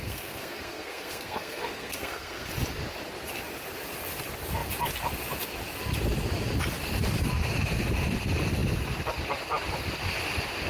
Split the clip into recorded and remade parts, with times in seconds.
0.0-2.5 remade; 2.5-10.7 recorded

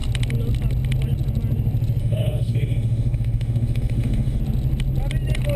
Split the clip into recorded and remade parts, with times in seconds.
0.0-2.0 recorded; 2.0-4.4 remade; 4.4-5.6 recorded

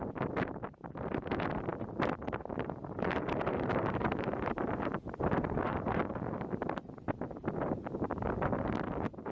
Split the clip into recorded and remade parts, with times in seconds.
0.0-1.7 recorded; 1.7-6.0 remade; 6.0-9.3 recorded

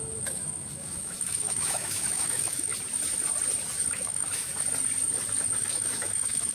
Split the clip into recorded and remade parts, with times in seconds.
0.0-2.7 remade; 2.7-3.9 recorded; 3.9-4.5 remade; 4.5-5.6 recorded; 5.6-6.5 remade

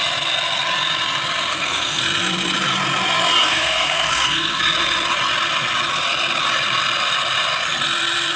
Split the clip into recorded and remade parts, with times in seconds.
0.0-1.5 recorded; 1.5-2.0 remade; 2.0-3.4 recorded; 3.4-4.6 remade; 4.6-8.4 recorded